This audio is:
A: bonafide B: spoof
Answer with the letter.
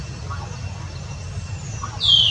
A